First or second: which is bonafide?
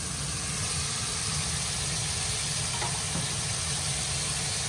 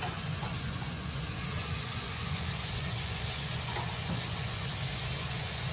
first